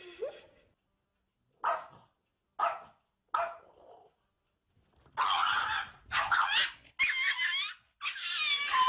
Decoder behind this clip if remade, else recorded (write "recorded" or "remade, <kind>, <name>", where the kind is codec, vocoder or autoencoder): recorded